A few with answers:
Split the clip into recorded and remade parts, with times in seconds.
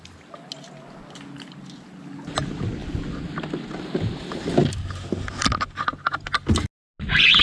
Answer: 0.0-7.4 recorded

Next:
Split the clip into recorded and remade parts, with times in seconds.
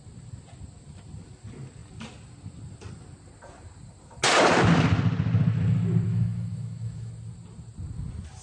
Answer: 0.0-6.1 recorded; 6.1-7.1 remade; 7.1-8.4 recorded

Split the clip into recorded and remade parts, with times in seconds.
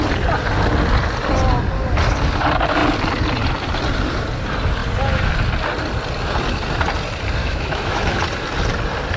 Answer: 0.0-7.4 recorded; 7.4-8.2 remade; 8.2-9.2 recorded